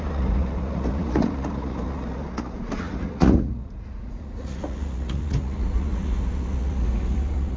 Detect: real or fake fake